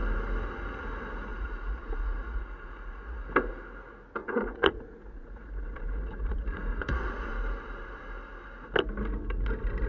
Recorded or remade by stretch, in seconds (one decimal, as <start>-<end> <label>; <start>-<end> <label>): 0.0-1.3 recorded; 1.3-3.3 remade; 3.3-4.2 recorded; 4.2-7.3 remade; 7.3-9.9 recorded

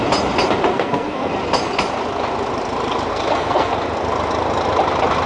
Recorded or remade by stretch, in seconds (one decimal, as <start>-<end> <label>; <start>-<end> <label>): 0.0-0.7 recorded; 0.7-1.3 remade; 1.3-3.1 recorded; 3.1-3.7 remade; 3.7-5.3 recorded

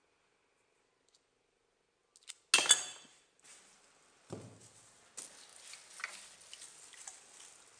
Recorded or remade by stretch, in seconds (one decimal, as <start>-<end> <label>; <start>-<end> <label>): 0.0-7.8 recorded

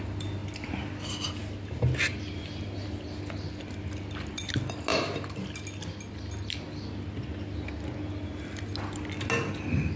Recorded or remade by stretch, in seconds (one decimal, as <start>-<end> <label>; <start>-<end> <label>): 0.0-10.0 recorded

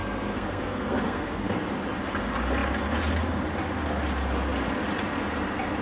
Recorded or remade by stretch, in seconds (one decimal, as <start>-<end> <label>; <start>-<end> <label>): 0.0-1.6 remade; 1.6-5.8 recorded

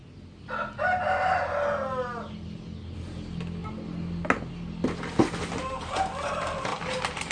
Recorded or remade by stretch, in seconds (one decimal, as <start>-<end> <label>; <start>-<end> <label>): 0.0-6.7 recorded; 6.7-7.3 remade